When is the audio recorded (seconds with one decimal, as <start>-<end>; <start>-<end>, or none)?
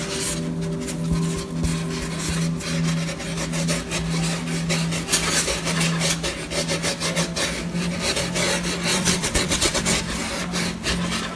0.0-8.9; 9.8-11.4